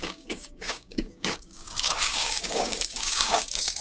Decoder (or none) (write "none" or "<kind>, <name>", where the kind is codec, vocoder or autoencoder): codec, DAC